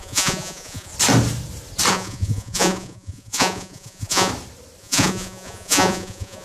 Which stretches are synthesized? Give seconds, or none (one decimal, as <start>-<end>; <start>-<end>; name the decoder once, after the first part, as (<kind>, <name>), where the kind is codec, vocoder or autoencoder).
0.0-0.9 (vocoder, Vocos); 1.9-4.3; 4.8-6.4